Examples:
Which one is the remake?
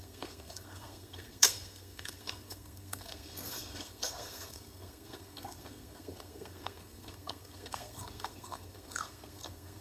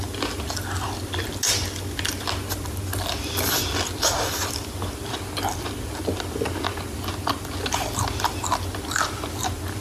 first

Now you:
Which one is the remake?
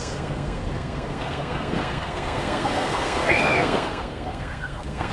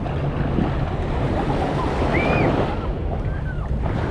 first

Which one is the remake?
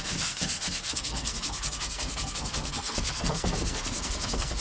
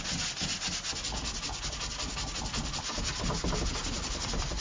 first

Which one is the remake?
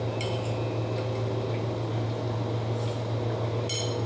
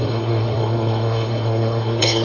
second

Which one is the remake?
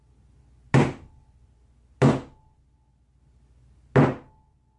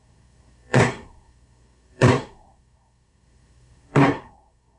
second